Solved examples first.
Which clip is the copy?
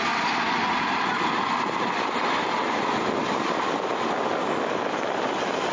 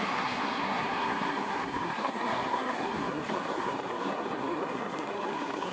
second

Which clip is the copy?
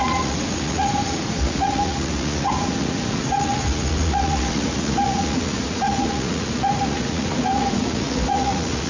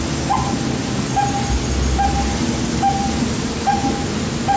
first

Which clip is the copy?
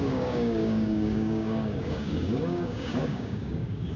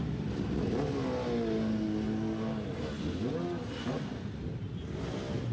first